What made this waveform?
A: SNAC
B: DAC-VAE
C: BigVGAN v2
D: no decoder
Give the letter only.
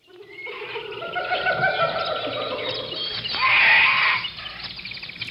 D